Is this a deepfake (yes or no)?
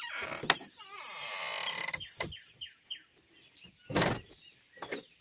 no